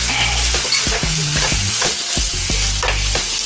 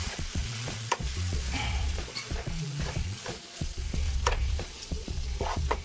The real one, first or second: first